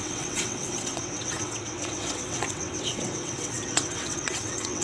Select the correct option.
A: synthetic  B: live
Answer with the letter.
A